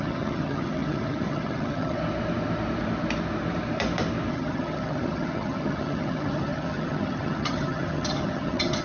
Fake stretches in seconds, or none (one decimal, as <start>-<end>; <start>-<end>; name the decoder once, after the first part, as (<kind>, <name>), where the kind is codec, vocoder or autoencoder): 0.0-2.0 (vocoder, HiFi-GAN); 4.3-8.8